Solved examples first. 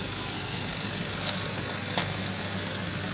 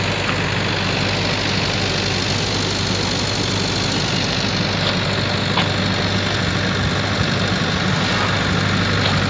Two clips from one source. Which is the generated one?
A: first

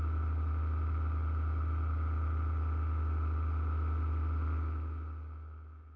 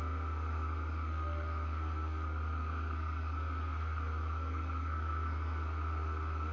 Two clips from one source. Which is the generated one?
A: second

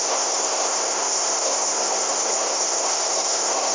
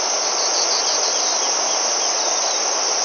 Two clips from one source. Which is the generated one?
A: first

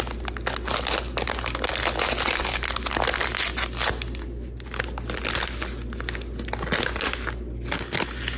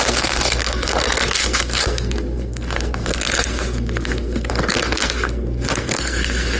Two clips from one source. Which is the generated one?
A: second